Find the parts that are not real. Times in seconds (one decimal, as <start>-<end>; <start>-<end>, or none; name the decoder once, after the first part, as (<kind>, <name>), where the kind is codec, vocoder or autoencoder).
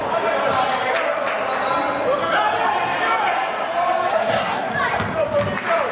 4.1-4.7 (codec, SNAC)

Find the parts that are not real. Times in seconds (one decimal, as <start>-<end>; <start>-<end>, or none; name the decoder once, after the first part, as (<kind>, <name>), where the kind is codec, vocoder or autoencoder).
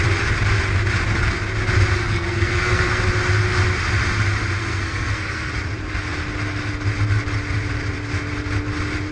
2.0-3.0 (codec, SNAC); 4.6-5.5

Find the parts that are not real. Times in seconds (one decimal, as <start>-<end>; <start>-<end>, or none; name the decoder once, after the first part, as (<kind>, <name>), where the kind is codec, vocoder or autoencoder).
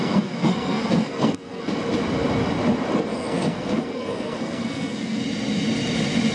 0.0-1.7 (codec, SNAC); 3.1-5.2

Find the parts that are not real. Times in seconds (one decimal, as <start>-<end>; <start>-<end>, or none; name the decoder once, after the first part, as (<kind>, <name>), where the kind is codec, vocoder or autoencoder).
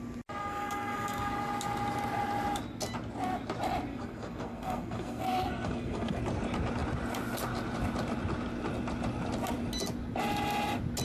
0.4-1.3 (codec, SNAC); 3.9-6.2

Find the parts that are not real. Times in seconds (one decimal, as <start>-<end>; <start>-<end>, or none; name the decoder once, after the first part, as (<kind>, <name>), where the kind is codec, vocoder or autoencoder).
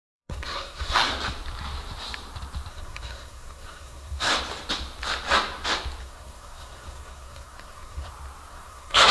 0.0-1.1 (codec, SNAC); 2.7-4.3; 6.0-8.1; 8.5-9.1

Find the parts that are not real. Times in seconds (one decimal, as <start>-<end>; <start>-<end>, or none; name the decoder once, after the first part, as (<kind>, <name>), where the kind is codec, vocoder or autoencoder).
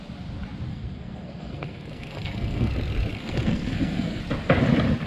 0.7-2.7 (codec, SNAC); 3.1-4.2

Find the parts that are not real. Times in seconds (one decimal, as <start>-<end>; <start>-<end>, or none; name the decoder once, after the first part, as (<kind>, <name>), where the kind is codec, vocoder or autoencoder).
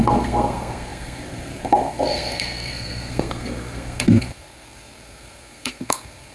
0.0-6.3 (codec, SNAC)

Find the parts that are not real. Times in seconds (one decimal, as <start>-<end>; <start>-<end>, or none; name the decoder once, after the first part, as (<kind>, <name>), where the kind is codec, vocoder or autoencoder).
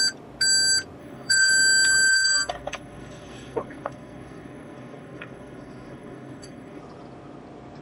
1.0-1.5 (codec, SNAC); 2.1-6.8